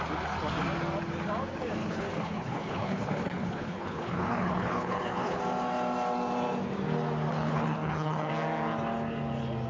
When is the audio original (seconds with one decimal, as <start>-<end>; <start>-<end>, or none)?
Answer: 0.0-1.8; 5.4-7.3; 8.3-9.7